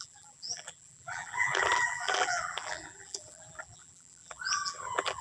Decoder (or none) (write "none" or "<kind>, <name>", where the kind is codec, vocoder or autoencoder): vocoder, BigVGAN v2